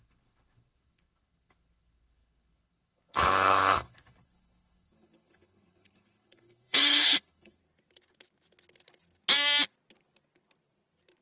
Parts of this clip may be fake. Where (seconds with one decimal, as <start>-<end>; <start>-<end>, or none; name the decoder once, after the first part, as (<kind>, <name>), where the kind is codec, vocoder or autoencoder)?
0.0-7.6 (codec, HILCodec)